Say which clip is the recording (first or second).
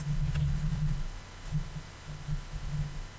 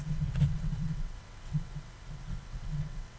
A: first